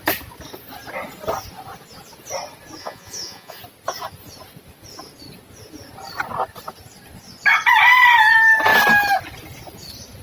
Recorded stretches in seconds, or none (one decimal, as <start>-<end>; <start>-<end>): 0.0-2.8; 3.6-10.2